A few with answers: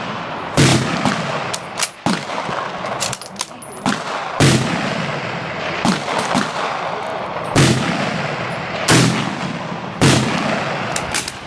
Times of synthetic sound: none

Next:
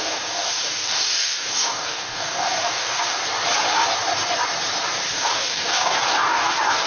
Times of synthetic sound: 0.0-3.2 (codec, DAC); 5.1-6.9

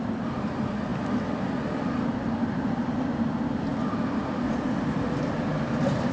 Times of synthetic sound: none

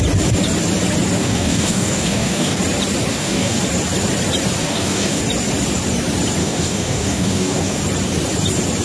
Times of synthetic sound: 1.2-2.6 (codec, DAC); 3.1-3.6; 4.6-5.2; 6.4-7.8

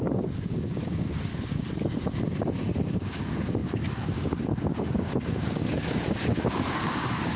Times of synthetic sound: 0.0-1.3 (codec, DAC); 2.9-7.4

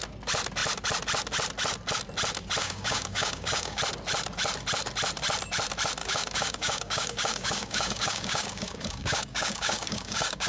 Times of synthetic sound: 2.6-3.8 (codec, DAC); 6.0-10.5